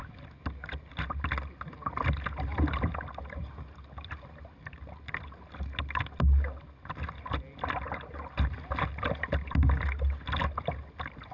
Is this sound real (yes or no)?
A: yes